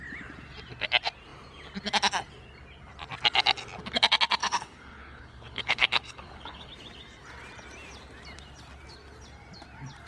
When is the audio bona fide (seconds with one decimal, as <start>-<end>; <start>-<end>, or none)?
0.0-4.4; 6.7-10.1